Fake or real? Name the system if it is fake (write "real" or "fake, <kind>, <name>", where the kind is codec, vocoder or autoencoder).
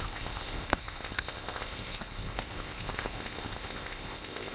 fake, codec, ZipCodec